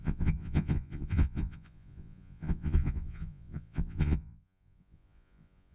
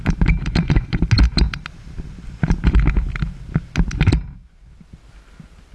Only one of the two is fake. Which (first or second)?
first